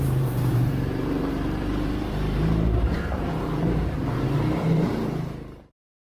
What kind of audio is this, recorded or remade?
remade